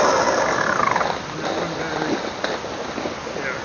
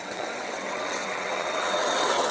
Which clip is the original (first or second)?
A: first